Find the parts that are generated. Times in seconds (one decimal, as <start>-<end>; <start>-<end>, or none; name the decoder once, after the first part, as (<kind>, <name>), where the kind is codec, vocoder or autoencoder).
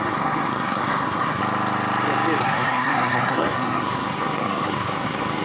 0.0-1.4 (codec, SNAC); 2.4-5.4